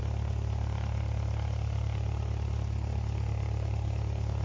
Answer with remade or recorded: recorded